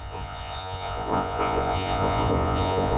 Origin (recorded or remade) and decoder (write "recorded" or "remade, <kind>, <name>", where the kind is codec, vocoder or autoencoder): remade, vocoder, Vocos